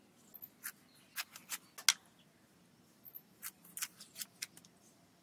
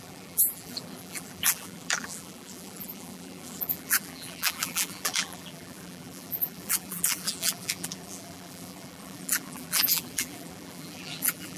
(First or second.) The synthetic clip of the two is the second